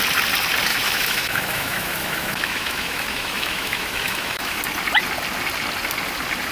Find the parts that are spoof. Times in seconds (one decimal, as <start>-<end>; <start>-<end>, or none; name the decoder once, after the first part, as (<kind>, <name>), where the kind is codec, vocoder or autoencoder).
0.7-4.6 (autoencoder, DAC-VAE)